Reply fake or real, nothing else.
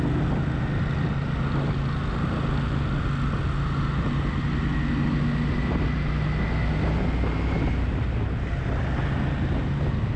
real